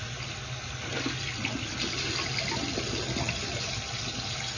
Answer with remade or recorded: recorded